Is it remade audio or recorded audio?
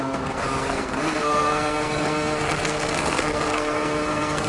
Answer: remade